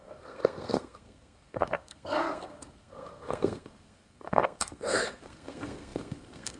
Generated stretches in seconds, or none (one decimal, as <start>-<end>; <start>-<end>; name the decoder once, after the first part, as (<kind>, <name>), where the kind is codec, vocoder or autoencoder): 0.0-6.6 (codec, SNAC)